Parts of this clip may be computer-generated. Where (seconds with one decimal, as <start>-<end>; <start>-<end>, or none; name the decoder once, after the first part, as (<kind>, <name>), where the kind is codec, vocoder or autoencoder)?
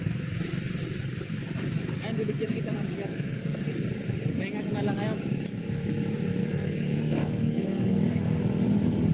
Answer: 3.1-3.7 (codec, SNAC); 6.4-8.4